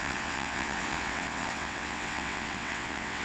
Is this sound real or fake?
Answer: fake